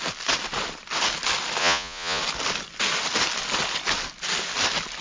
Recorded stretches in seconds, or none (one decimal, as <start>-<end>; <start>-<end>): 0.0-1.6; 2.2-5.0